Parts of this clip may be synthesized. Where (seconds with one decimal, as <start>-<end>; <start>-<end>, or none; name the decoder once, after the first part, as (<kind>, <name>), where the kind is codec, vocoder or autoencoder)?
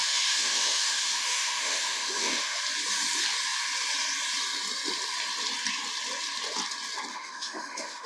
0.0-2.6 (autoencoder, DAC-VAE); 7.1-8.1